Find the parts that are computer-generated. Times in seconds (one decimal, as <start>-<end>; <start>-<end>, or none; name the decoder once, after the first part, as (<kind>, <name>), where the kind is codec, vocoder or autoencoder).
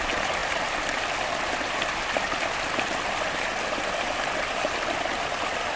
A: none